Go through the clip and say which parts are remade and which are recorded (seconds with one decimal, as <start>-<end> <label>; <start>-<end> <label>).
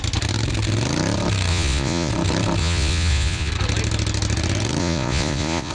0.0-1.5 recorded; 1.5-2.1 remade; 2.1-2.6 recorded; 2.6-3.5 remade; 3.5-4.8 recorded; 4.8-5.7 remade